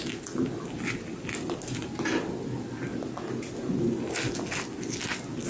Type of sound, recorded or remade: recorded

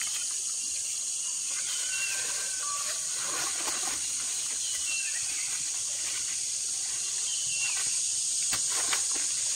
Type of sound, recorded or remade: recorded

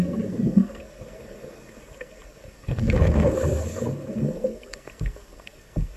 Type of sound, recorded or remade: remade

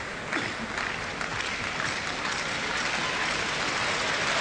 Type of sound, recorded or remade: recorded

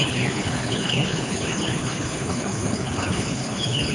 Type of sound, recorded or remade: remade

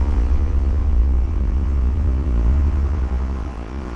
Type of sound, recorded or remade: remade